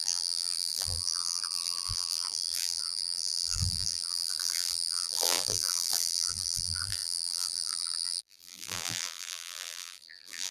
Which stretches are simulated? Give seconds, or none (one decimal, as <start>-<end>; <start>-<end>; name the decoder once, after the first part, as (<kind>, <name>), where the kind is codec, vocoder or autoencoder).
0.0-10.5 (vocoder, BigVGAN v2)